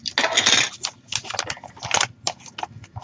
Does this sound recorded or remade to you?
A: recorded